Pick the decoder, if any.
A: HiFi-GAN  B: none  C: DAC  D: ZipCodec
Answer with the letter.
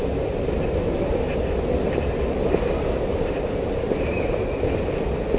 B